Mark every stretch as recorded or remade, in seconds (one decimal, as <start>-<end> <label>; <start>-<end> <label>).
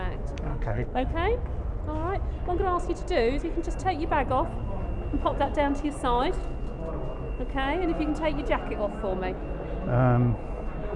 0.0-0.5 recorded; 0.5-1.1 remade; 1.1-11.0 recorded